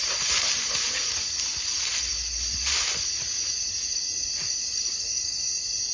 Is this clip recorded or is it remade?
recorded